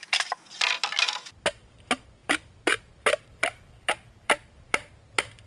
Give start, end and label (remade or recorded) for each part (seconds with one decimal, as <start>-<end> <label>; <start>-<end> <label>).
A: 0.0-2.2 recorded; 2.2-4.9 remade; 4.9-5.5 recorded